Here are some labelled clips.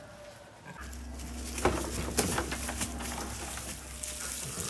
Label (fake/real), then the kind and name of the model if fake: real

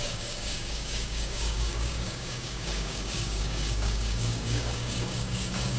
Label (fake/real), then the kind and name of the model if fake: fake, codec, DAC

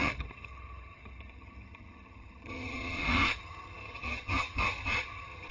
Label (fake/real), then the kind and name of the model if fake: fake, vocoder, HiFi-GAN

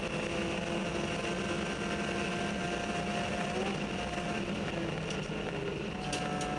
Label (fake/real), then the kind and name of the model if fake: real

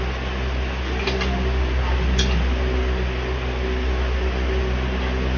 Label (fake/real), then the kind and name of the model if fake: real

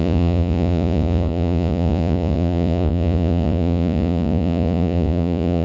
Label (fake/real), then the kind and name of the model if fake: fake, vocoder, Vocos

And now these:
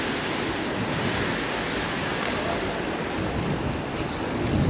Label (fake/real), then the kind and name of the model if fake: real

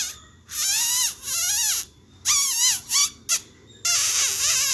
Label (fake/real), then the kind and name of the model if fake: real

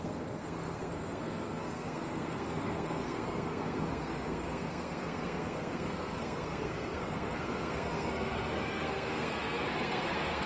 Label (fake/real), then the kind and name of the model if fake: fake, codec, SNAC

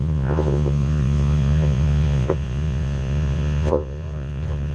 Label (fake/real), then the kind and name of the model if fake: fake, vocoder, Vocos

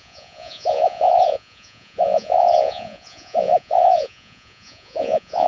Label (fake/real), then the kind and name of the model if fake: fake, vocoder, Vocos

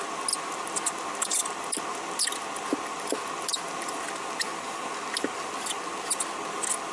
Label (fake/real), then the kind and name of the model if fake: real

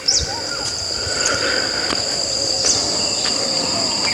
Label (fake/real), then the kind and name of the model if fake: real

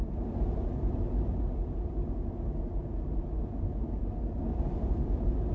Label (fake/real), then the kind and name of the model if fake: real